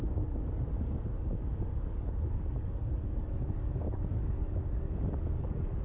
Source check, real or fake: fake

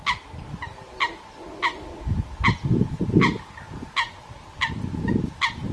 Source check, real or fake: real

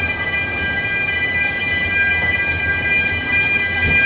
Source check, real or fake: real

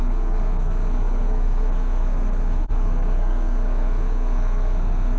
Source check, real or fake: fake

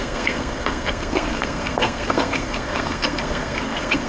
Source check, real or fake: fake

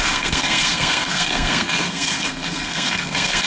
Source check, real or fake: fake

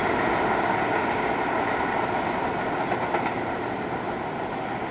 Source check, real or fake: real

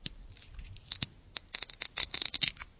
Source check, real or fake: real